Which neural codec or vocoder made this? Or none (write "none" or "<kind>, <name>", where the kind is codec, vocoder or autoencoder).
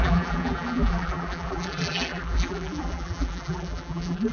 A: vocoder, BigVGAN v2